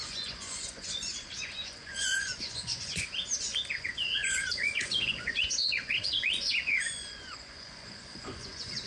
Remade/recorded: remade